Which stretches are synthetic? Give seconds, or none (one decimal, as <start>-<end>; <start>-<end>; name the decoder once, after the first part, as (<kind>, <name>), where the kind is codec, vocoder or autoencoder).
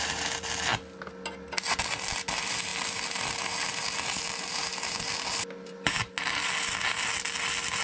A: none